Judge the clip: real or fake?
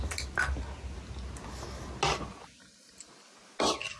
real